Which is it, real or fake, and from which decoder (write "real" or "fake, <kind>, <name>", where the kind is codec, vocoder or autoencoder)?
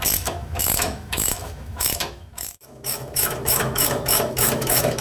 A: fake, autoencoder, DAC-VAE